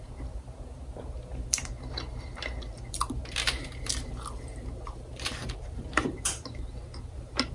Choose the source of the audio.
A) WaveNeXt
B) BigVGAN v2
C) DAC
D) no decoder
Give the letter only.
B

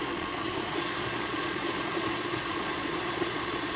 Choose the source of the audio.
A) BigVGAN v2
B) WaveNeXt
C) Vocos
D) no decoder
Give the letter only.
C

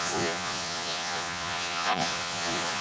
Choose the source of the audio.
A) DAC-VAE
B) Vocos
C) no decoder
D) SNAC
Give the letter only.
B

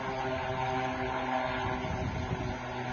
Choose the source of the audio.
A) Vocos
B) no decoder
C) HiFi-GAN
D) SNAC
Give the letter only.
B